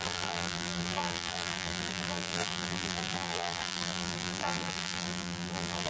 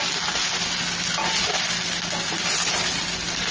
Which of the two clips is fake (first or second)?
first